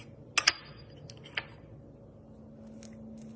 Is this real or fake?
real